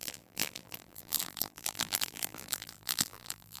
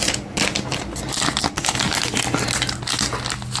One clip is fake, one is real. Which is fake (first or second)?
first